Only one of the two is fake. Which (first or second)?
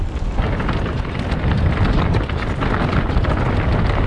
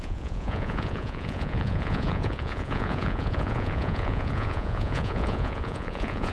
second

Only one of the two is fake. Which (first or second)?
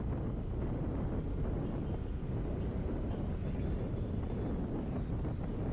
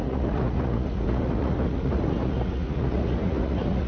second